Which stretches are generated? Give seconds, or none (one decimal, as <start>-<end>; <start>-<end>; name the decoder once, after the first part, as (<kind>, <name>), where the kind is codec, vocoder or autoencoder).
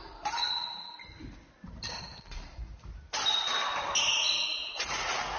4.6-5.4 (vocoder, Vocos)